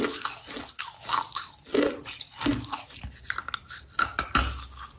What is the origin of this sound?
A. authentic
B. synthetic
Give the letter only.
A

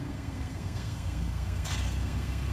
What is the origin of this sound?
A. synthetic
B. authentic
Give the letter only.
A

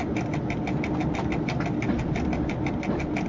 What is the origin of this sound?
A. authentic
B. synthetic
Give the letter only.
A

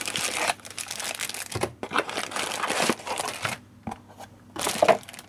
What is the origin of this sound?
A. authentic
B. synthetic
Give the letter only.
A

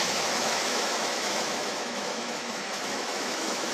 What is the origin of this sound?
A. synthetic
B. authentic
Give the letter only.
A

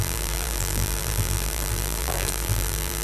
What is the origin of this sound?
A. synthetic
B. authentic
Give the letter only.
A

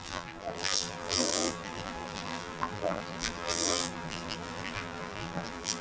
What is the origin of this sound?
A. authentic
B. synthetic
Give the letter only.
B